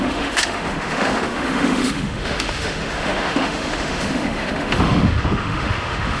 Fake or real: fake